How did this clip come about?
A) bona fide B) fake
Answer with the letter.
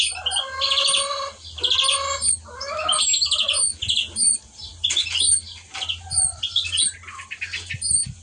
A